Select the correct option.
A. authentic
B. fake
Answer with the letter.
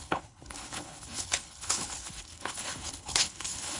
B